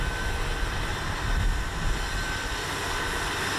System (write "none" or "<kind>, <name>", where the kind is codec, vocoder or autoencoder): none